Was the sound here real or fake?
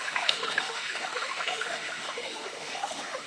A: fake